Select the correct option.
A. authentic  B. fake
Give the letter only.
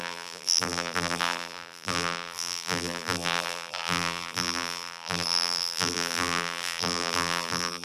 B